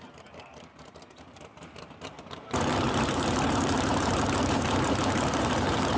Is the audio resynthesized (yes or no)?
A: yes